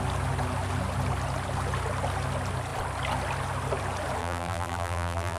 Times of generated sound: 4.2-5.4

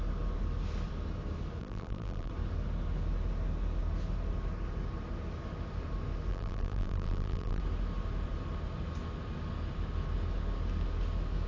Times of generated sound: 1.6-2.3; 6.3-7.6

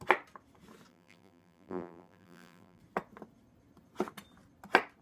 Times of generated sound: 0.9-2.8

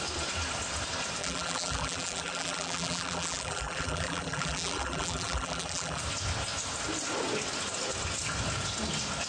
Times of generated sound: 1.2-6.0

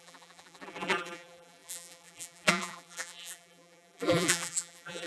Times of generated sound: 0.0-5.1